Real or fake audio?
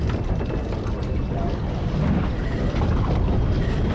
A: real